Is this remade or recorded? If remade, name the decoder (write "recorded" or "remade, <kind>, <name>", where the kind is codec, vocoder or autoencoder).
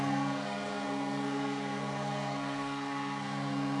remade, codec, SNAC